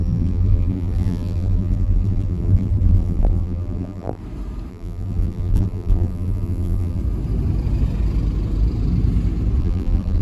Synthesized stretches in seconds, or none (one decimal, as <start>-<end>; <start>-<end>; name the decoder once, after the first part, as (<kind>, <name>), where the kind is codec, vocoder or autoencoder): 0.0-4.2 (vocoder, BigVGAN v2); 4.7-7.0; 9.6-10.2